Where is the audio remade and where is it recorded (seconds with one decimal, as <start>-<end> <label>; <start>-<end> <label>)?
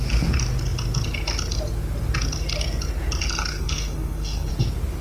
0.0-3.5 recorded; 3.5-4.5 remade; 4.5-5.0 recorded